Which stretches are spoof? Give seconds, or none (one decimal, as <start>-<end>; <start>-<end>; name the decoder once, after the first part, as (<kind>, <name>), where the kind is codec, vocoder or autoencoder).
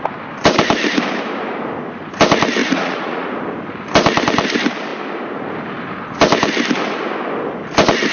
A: 2.6-3.3 (vocoder, Vocos)